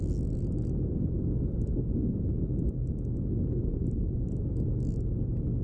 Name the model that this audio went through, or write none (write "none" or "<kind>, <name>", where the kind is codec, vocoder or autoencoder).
none